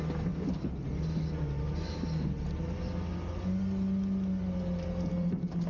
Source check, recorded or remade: recorded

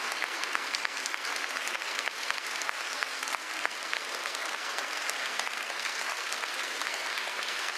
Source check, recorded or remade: remade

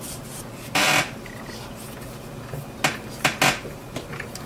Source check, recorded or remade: recorded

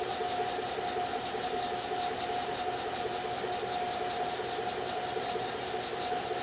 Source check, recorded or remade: recorded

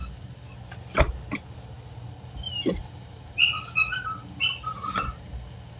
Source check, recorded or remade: recorded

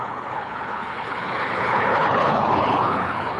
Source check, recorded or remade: remade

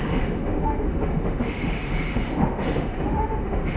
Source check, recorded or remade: remade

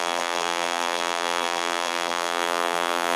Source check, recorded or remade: remade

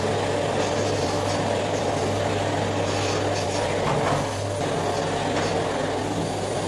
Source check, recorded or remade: recorded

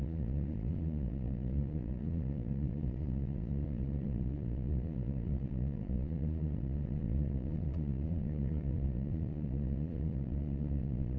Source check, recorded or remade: remade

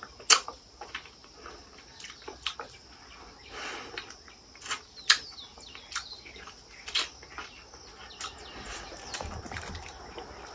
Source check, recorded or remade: recorded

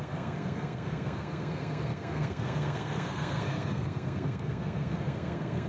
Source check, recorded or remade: remade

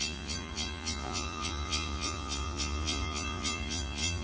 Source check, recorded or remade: remade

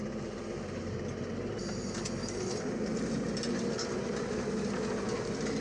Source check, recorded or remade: recorded